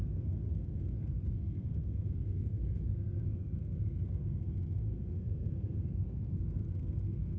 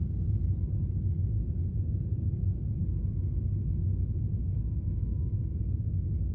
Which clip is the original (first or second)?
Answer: second